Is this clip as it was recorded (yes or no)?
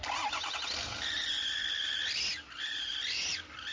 yes